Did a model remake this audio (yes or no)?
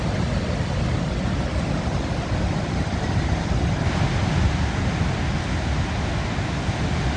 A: no